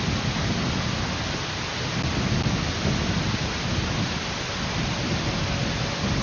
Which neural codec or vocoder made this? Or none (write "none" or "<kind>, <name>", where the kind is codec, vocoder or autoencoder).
none